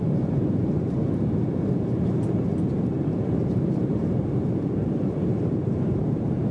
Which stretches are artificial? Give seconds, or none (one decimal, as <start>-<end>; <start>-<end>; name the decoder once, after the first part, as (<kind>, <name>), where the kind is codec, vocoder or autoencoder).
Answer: 0.0-1.0 (vocoder, BigVGAN v2); 1.5-6.5